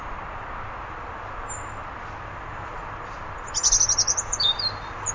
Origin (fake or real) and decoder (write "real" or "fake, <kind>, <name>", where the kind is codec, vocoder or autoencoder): real